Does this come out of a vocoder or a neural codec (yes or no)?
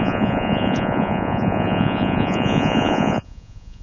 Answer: yes